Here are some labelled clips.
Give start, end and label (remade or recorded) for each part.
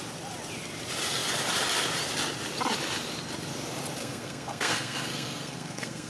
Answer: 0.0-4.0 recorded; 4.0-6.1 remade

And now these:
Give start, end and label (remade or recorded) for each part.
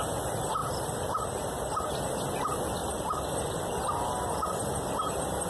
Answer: 0.0-2.8 recorded; 2.8-4.3 remade; 4.3-5.5 recorded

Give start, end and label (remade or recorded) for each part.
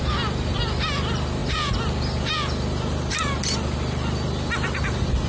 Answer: 0.0-5.3 recorded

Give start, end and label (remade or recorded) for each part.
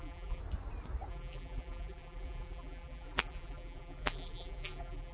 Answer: 0.0-0.4 remade; 0.4-1.1 recorded; 1.1-5.1 remade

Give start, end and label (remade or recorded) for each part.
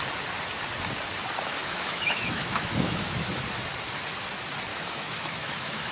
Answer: 0.0-1.6 recorded; 1.6-3.3 remade; 3.3-4.7 recorded; 4.7-5.9 remade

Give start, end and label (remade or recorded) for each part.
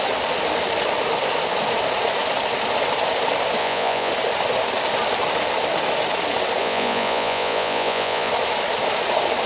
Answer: 0.0-3.6 recorded; 3.6-4.1 remade; 4.1-6.6 recorded; 6.6-8.3 remade; 8.3-9.5 recorded